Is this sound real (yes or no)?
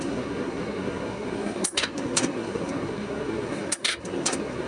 no